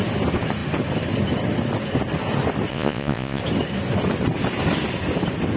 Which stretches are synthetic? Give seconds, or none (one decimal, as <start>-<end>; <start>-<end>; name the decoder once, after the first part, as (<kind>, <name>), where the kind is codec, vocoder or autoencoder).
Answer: 2.7-3.4 (vocoder, Vocos)